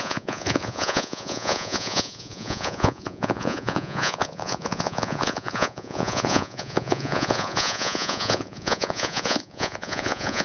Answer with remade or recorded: remade